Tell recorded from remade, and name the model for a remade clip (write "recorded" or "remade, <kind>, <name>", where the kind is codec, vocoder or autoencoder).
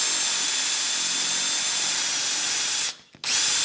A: recorded